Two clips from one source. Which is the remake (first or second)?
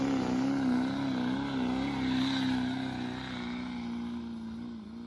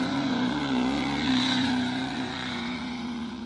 second